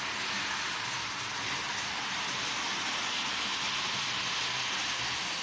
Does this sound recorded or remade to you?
recorded